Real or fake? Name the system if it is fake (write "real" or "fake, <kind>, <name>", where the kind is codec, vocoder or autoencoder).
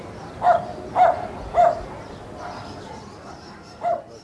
real